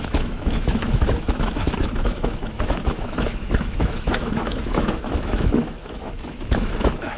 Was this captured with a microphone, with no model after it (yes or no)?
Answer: no